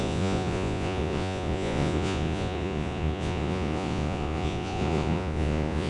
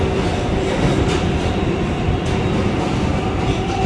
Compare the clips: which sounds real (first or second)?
second